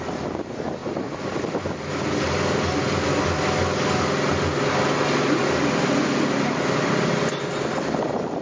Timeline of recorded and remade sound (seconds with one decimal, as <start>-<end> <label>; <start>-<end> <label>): 0.0-8.4 recorded